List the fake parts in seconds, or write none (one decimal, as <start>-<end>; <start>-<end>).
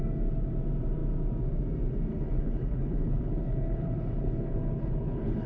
2.1-5.5